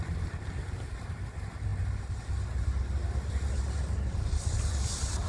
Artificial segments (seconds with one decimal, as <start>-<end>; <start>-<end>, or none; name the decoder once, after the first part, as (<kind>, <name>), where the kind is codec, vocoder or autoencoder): none